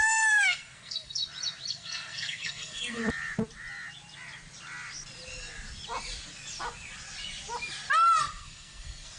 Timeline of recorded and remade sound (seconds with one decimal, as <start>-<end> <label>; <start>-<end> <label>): 0.0-1.2 remade; 1.2-1.7 recorded; 1.7-3.0 remade; 3.0-8.2 recorded; 8.2-9.2 remade